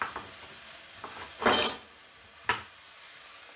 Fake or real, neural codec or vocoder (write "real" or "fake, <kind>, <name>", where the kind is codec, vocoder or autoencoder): real